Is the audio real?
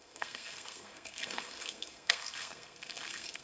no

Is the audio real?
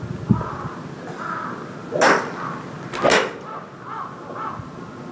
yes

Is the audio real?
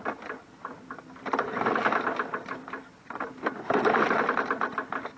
yes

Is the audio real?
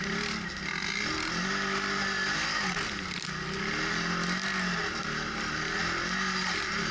yes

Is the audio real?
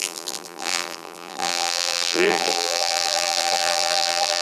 no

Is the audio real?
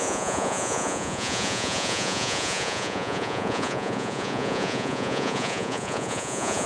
no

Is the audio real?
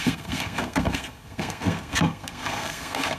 no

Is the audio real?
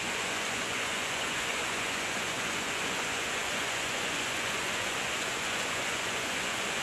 no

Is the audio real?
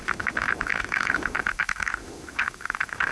no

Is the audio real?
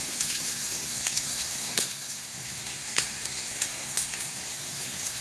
no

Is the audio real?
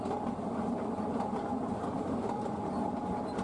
yes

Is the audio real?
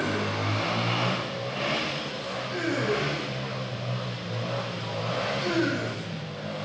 yes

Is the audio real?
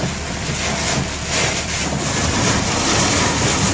yes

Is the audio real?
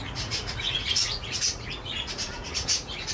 no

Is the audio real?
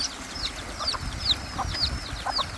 yes